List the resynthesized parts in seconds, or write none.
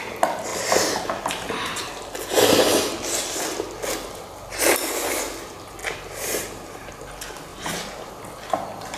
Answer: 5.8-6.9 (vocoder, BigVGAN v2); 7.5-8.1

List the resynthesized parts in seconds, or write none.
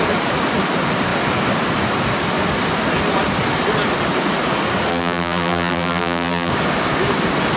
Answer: 4.9-6.5 (vocoder, BigVGAN v2)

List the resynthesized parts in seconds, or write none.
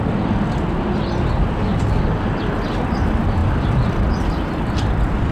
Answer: 1.7-2.6 (vocoder, BigVGAN v2); 3.4-4.1